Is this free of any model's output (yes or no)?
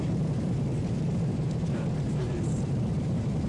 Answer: no